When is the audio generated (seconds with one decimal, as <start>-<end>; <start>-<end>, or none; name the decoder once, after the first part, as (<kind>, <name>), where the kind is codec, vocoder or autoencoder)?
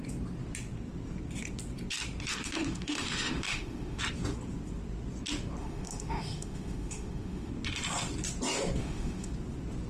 2.3-4.0 (autoencoder, DAC-VAE); 5.6-7.5; 8.8-9.3